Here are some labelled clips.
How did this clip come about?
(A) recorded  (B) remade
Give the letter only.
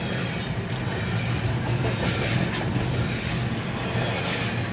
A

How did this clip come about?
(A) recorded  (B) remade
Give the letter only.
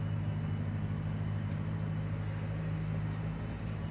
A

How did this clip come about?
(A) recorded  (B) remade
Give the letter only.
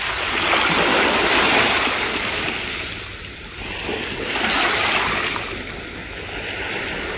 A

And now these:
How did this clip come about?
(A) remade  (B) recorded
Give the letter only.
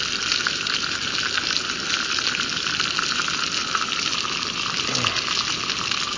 B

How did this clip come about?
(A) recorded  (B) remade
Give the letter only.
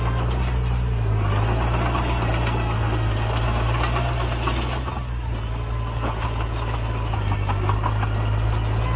A